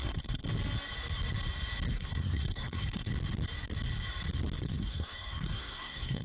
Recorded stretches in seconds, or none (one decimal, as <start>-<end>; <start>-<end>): 0.4-1.9; 3.1-4.6

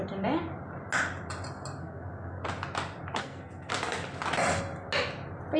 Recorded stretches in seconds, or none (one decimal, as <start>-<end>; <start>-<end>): 0.0-1.8; 2.4-3.2; 3.7-5.6

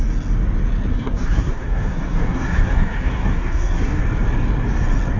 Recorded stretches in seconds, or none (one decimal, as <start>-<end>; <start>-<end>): 0.0-0.9; 4.0-5.2

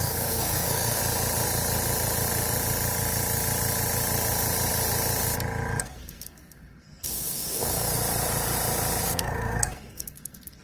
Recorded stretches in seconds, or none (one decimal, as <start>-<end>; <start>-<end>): 1.0-5.8; 8.0-9.0